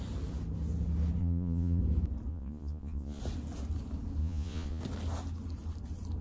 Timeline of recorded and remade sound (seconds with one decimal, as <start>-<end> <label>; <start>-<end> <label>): 0.0-1.2 recorded; 1.2-1.8 remade; 1.8-2.3 recorded; 2.3-3.2 remade; 3.2-4.2 recorded; 4.2-4.8 remade; 4.8-6.2 recorded